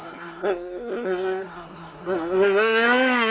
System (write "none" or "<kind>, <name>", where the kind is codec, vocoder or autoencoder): codec, SNAC